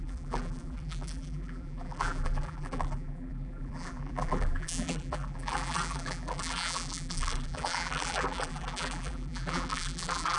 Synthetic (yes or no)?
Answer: yes